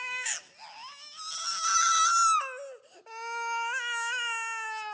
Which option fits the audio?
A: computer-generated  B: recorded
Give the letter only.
B